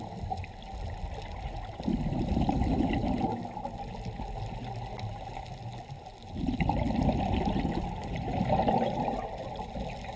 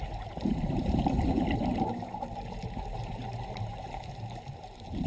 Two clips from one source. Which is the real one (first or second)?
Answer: first